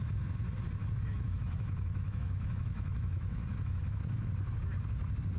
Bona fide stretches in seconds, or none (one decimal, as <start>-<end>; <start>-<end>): 0.0-0.8; 4.0-5.4